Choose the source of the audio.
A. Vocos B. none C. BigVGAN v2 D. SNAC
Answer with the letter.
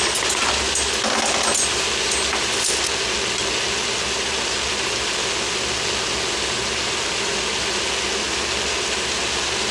B